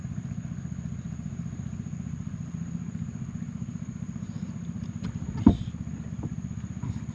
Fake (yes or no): no